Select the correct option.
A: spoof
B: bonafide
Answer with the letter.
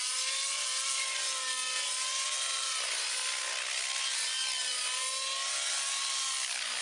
B